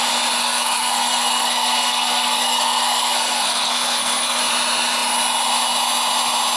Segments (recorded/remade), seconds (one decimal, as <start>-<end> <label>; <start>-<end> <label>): 0.0-0.4 recorded; 0.4-4.4 remade; 4.4-6.6 recorded